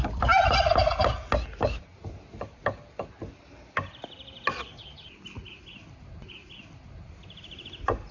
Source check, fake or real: real